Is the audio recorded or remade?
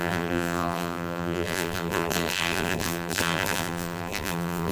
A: remade